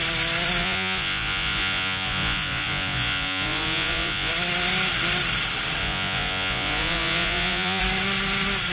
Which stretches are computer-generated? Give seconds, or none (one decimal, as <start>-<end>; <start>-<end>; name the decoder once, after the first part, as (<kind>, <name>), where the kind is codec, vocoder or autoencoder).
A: 0.6-4.3 (vocoder, Vocos); 5.8-7.8